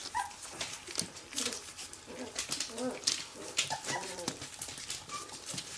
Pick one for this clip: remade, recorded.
recorded